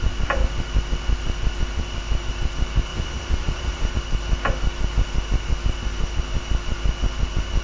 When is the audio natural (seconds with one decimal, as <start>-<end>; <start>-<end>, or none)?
0.0-2.9; 3.9-7.6